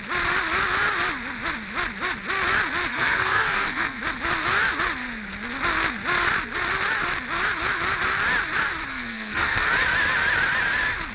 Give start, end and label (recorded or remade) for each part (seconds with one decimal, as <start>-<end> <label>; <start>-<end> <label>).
0.0-2.9 recorded; 2.9-4.0 remade; 4.0-8.9 recorded; 8.9-9.7 remade; 9.7-11.1 recorded